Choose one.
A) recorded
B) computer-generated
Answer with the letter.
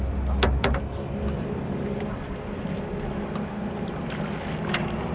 A